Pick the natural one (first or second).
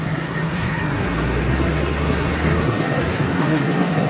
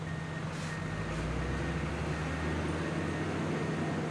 second